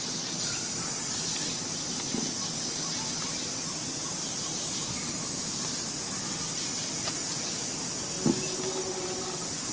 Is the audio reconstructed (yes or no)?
no